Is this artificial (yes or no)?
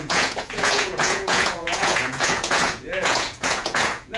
yes